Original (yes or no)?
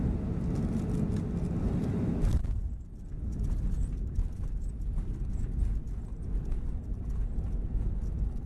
yes